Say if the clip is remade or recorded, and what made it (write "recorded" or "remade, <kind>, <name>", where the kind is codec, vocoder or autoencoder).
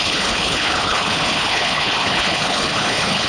remade, codec, HILCodec